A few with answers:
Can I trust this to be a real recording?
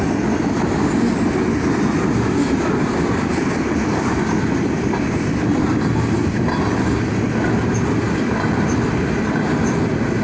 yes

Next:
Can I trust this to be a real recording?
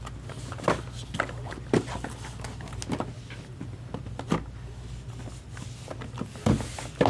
yes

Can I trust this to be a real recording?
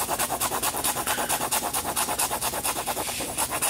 yes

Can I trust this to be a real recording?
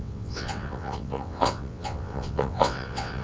no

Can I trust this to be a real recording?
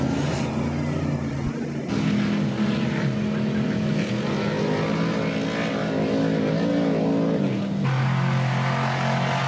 yes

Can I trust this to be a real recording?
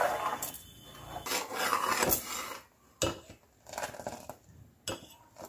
yes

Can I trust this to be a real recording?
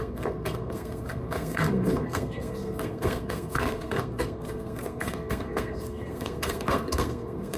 no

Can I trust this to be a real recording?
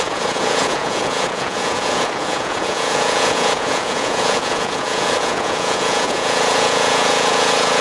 no